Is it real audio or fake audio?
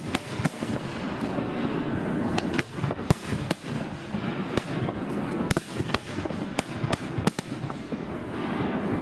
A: fake